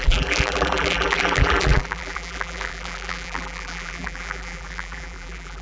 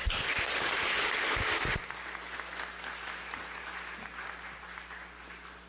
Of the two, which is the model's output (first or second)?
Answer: first